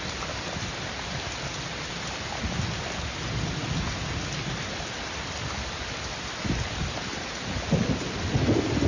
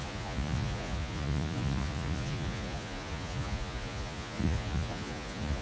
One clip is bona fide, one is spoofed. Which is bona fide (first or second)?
first